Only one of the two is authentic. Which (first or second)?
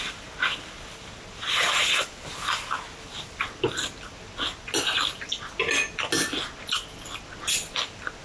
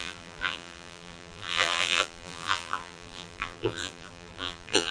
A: first